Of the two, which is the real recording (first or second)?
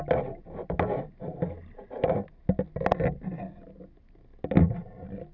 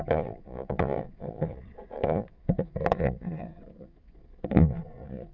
first